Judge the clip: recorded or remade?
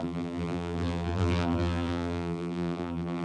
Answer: remade